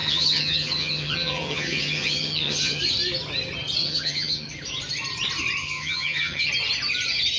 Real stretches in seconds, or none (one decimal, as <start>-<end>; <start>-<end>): 2.8-3.8; 4.5-5.6; 6.5-7.4